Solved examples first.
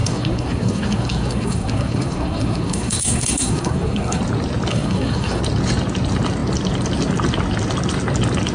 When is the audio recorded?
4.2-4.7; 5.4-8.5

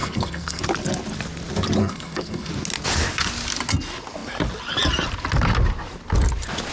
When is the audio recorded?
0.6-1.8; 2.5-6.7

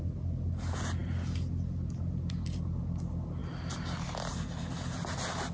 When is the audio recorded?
0.0-5.5

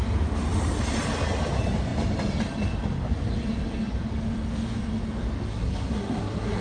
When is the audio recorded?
0.0-5.5

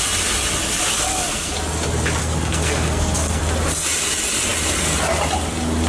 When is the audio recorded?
0.0-0.9; 1.5-2.2; 3.4-5.9

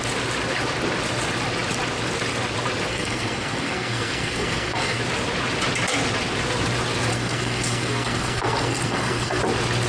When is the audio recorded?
0.0-2.9; 5.0-7.1; 9.4-9.9

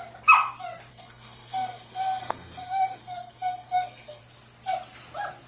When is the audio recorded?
0.0-0.9; 4.2-5.5

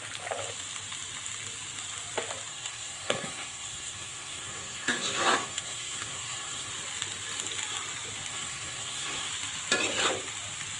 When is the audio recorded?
0.0-2.5; 6.7-8.3; 9.3-10.8